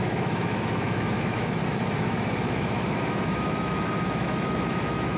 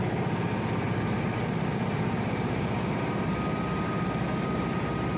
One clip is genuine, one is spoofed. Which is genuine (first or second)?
second